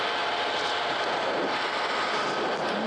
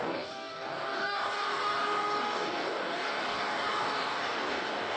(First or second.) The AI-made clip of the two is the second